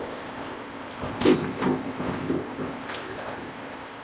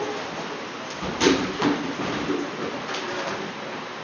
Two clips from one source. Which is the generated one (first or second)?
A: first